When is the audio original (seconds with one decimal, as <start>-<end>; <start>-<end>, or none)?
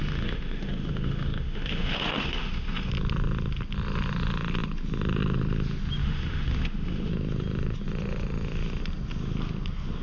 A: 2.9-6.0; 7.1-10.0